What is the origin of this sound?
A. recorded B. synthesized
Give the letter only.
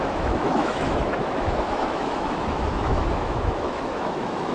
B